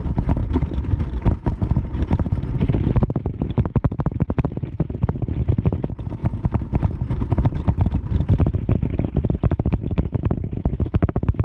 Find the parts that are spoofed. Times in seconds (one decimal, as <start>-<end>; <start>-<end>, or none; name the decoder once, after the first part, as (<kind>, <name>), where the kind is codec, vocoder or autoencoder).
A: 0.0-11.4 (vocoder, BigVGAN v2)

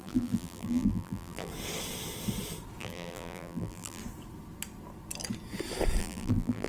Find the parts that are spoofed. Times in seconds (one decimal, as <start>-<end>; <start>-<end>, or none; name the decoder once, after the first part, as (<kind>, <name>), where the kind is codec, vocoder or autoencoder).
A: 0.0-1.5 (vocoder, BigVGAN v2); 2.8-4.0; 6.0-6.7

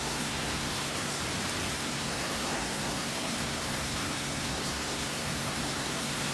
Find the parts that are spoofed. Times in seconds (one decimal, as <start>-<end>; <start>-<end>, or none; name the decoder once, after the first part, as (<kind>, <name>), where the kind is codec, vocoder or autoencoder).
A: 0.0-1.2 (codec, SNAC); 1.7-6.3

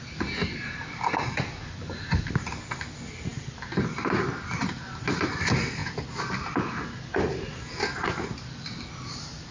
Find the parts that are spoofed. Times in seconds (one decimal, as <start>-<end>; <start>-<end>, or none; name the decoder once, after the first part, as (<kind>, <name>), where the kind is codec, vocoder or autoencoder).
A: none

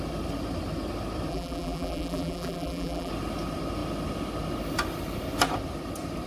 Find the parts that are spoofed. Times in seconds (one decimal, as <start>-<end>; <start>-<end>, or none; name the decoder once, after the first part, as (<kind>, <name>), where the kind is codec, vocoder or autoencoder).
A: 1.3-3.1 (vocoder, BigVGAN v2)